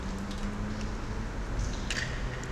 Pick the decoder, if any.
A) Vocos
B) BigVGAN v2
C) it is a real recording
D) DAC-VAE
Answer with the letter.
C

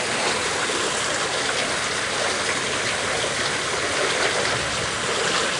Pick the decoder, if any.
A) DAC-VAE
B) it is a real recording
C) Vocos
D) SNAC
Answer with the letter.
B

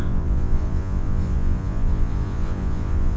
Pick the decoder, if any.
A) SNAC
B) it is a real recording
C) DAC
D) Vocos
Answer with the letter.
D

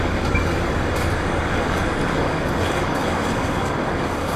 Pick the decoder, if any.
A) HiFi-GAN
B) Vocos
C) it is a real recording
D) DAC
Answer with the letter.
D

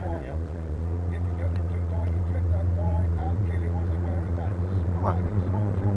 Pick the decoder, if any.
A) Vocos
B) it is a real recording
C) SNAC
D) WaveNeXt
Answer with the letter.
A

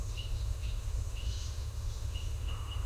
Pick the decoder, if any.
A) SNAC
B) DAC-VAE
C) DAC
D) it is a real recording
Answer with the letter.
B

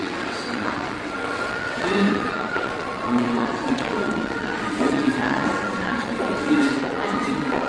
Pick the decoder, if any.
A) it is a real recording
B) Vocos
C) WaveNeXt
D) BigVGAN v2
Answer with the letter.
C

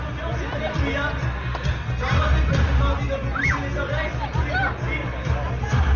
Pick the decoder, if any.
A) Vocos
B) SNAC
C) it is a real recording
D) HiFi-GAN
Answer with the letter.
C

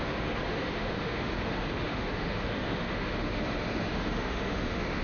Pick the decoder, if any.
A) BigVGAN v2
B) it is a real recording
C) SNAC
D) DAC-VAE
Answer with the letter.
D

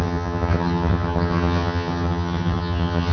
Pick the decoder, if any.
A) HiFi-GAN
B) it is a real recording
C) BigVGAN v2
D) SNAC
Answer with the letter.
A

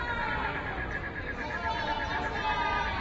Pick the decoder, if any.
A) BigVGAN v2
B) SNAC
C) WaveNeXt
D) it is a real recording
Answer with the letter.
D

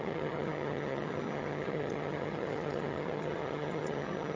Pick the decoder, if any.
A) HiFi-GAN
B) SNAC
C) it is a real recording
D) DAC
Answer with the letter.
A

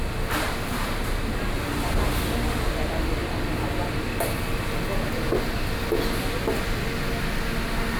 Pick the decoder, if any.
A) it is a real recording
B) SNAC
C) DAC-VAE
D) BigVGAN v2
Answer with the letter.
A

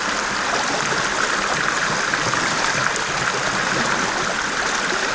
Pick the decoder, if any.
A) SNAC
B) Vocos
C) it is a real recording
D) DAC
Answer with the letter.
C